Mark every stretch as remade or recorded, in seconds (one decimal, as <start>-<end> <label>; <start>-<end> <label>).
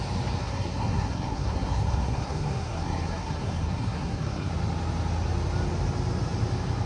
0.0-0.4 recorded; 0.4-4.5 remade; 4.5-6.9 recorded